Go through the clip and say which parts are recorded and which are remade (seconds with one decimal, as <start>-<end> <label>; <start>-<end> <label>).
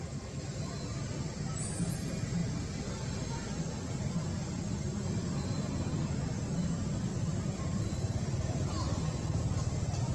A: 0.0-7.1 recorded; 7.1-8.2 remade; 8.2-10.1 recorded